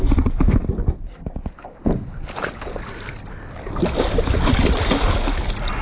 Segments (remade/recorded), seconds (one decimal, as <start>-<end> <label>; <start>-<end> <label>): 0.0-5.8 recorded